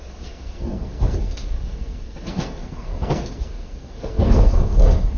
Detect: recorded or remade remade